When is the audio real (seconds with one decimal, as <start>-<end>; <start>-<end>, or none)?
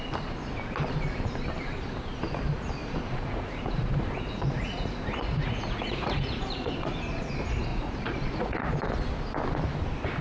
0.0-2.8; 7.3-7.7; 8.7-10.2